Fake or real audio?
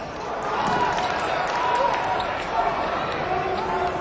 real